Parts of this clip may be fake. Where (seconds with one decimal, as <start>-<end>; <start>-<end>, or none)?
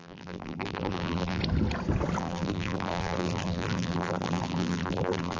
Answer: 0.0-1.4; 2.2-5.4